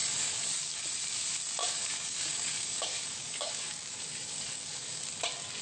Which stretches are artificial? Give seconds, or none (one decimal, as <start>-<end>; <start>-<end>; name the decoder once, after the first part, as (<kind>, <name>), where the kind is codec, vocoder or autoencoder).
0.0-0.8 (codec, DAC); 1.6-5.0